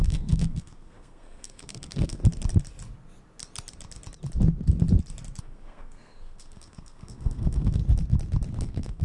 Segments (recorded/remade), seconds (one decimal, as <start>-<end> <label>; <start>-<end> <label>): 0.0-2.2 remade; 2.2-5.4 recorded; 5.4-7.8 remade; 7.8-8.6 recorded; 8.6-9.0 remade